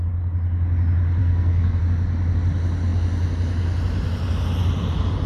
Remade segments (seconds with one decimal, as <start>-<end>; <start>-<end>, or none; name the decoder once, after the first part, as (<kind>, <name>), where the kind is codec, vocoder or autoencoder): 1.2-1.8 (codec, SNAC)